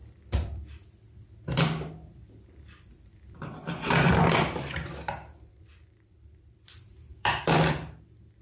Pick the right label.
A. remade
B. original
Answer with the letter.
A